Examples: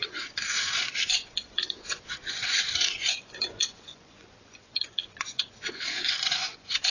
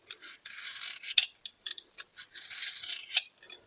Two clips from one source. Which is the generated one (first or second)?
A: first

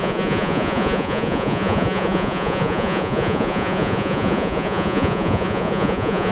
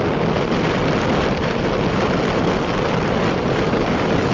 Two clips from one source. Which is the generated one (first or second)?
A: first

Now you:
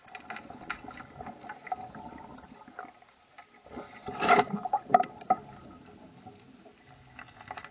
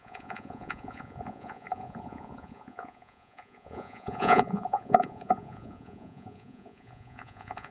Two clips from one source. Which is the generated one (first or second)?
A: second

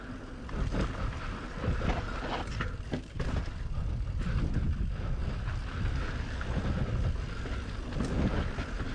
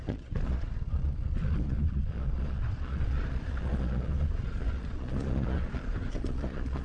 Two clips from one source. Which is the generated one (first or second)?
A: second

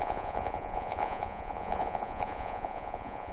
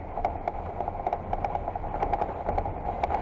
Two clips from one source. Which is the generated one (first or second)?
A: first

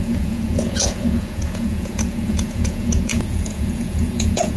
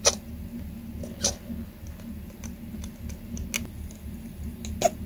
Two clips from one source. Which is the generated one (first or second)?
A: first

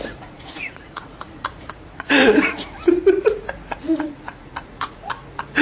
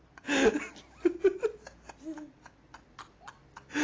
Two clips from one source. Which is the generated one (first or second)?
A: first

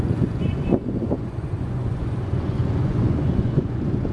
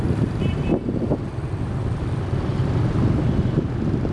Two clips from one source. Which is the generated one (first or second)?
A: first